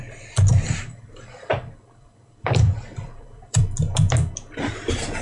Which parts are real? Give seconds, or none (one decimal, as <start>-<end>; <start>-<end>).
0.0-0.5; 3.6-5.2